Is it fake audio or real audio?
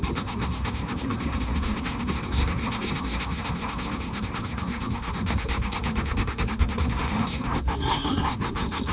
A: fake